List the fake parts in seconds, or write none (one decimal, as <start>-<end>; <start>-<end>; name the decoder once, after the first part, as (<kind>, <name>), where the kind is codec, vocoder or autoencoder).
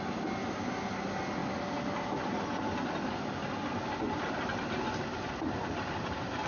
none